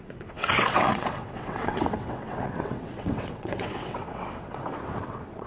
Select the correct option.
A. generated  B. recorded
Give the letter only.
A